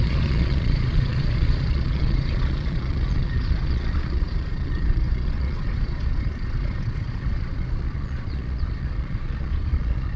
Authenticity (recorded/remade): remade